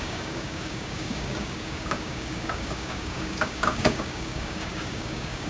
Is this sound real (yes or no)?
no